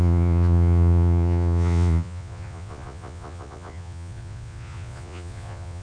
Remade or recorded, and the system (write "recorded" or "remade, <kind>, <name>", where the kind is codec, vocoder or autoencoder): remade, vocoder, Vocos